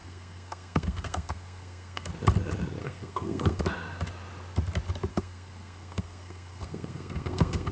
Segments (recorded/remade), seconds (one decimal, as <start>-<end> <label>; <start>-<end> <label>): 0.0-2.1 remade; 2.1-2.8 recorded; 2.8-3.6 remade; 3.6-5.1 recorded; 5.1-7.7 remade